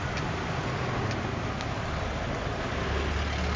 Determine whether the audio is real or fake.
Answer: real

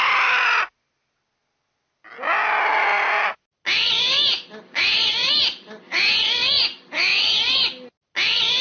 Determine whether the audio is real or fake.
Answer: real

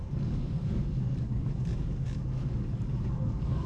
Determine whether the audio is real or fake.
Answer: fake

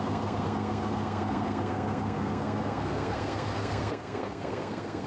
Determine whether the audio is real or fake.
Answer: fake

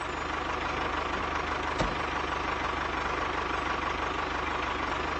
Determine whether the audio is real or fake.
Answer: real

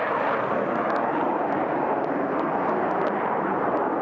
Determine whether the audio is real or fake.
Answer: real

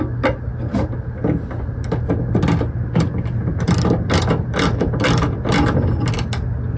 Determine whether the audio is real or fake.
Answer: real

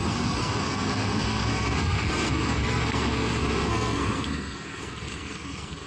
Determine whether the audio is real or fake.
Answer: fake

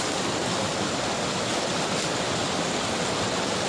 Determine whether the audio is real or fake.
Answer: real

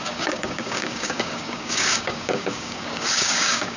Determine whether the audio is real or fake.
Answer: fake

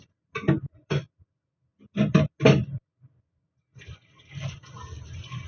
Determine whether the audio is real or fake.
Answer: real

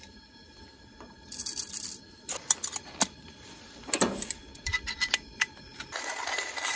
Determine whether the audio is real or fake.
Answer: real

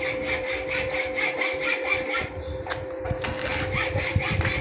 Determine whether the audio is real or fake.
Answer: real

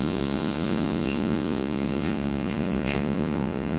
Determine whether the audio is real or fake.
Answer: fake